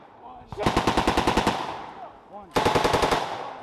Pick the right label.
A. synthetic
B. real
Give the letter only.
B